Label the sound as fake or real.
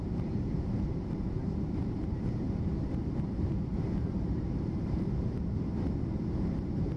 fake